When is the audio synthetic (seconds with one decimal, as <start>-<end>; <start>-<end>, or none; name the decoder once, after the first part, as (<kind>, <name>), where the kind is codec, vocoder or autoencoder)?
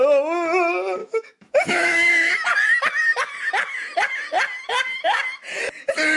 1.0-2.3 (autoencoder, DAC-VAE)